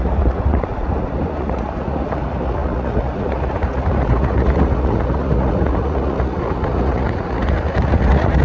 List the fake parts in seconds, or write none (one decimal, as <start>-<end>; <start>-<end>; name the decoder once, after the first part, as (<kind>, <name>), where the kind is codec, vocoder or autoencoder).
0.0-8.4 (vocoder, Vocos)